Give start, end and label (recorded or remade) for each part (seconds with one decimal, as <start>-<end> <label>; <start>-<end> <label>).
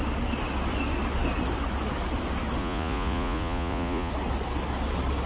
0.0-2.6 recorded; 2.6-4.1 remade; 4.1-5.3 recorded